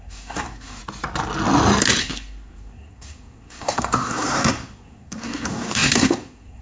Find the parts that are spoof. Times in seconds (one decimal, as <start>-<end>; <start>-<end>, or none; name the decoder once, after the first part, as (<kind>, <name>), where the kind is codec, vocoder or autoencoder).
0.0-0.8 (codec, SNAC); 2.0-6.6